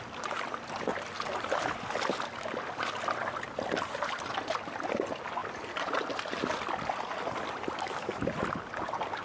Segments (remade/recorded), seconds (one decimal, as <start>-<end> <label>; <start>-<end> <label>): 0.0-9.2 recorded